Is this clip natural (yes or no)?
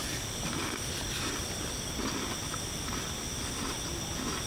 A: yes